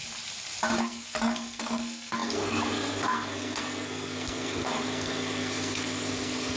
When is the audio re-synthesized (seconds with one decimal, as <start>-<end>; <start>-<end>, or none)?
0.8-6.6